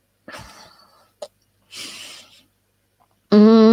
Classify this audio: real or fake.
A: real